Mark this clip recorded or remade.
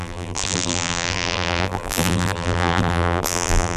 remade